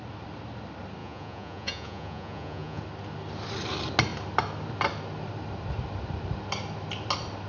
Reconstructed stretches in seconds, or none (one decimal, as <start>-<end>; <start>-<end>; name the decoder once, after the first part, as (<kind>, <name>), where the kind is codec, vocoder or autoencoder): 1.0-2.8 (vocoder, Vocos)